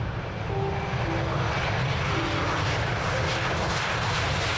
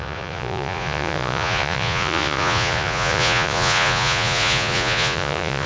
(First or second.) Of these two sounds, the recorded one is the first